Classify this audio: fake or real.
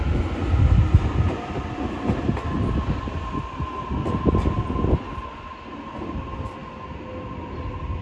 real